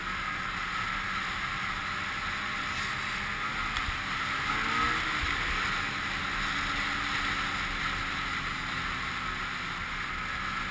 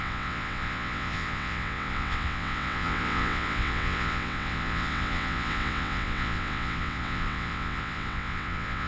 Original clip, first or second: first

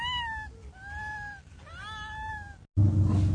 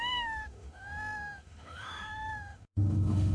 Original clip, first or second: first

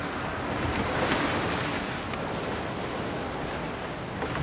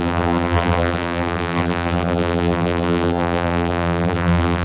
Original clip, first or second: first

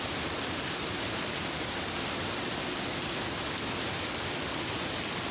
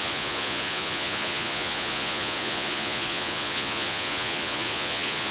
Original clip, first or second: first